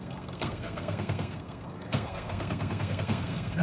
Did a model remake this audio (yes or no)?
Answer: yes